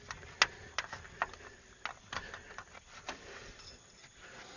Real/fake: real